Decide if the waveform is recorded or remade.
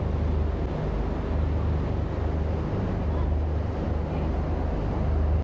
recorded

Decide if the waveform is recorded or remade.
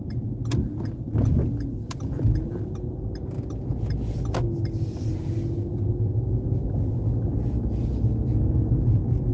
recorded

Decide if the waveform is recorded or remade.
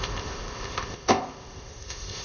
remade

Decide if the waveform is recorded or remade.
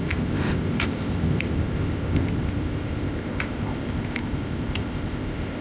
remade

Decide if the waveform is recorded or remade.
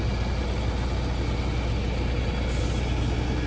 recorded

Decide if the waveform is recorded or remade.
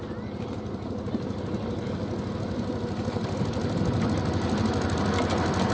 recorded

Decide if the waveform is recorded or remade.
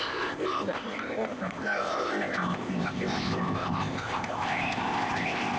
remade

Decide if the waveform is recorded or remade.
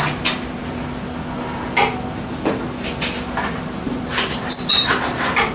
recorded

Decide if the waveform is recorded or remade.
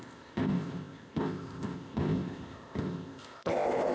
remade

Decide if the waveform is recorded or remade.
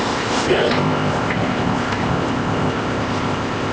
remade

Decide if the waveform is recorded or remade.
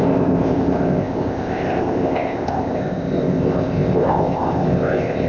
remade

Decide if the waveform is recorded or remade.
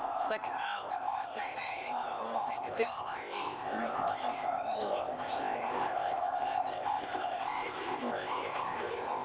remade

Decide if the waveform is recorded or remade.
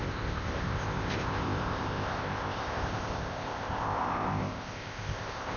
remade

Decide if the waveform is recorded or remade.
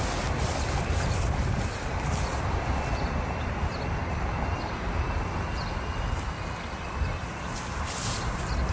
recorded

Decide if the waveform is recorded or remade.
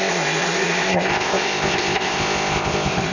remade